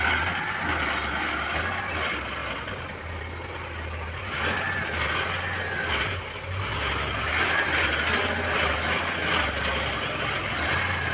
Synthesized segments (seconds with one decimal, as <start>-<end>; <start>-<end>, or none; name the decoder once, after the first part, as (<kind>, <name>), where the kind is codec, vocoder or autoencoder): 2.4-3.2 (vocoder, BigVGAN v2)